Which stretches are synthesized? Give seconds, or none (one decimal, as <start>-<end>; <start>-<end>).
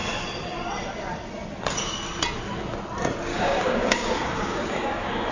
3.3-5.3